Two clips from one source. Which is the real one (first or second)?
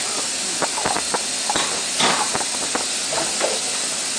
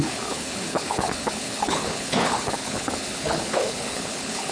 first